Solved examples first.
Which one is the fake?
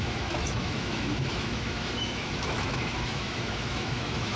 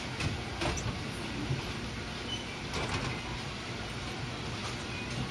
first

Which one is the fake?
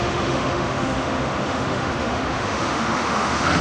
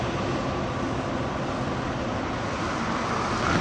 first